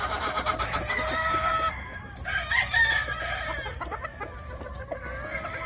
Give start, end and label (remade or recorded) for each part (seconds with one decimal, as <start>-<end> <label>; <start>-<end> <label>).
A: 0.0-5.7 recorded